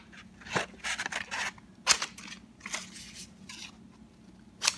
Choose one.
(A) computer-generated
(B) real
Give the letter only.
B